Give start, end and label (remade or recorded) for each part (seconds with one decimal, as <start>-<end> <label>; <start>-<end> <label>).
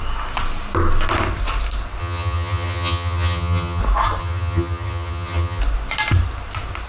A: 0.0-2.0 recorded; 2.0-3.8 remade; 3.8-4.2 recorded; 4.2-5.6 remade; 5.6-6.9 recorded